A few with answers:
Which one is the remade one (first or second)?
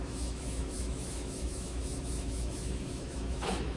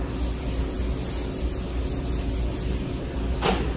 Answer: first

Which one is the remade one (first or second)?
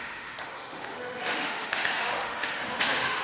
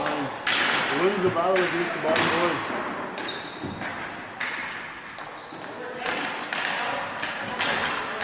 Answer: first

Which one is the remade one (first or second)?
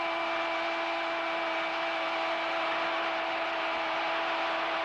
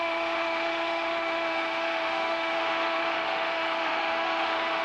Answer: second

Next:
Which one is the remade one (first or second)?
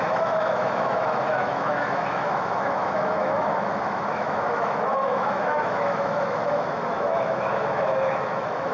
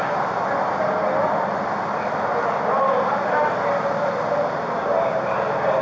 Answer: first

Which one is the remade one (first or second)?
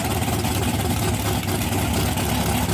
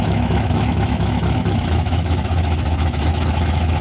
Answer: second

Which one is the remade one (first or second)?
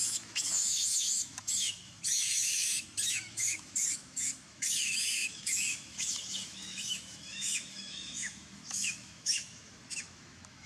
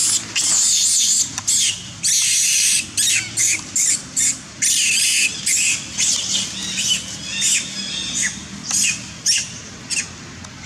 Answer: first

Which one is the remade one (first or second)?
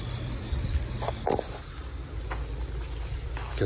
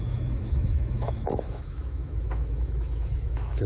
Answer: second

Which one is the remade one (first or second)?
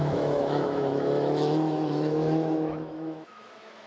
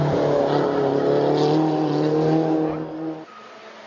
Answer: first